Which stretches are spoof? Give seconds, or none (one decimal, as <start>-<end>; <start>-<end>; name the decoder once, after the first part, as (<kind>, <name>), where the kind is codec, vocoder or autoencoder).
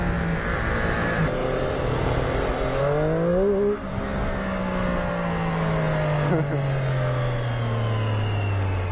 none